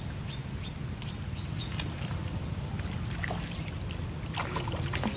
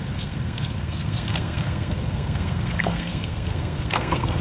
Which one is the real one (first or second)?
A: first